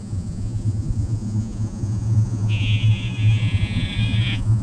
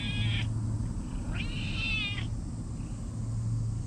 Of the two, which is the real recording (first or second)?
second